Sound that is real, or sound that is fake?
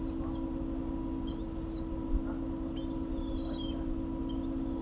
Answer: real